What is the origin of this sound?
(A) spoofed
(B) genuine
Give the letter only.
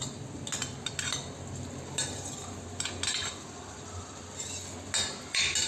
B